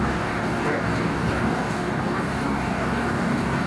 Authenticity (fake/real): fake